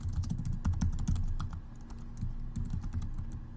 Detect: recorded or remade recorded